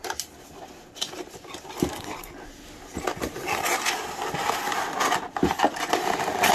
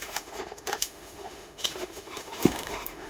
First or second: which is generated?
second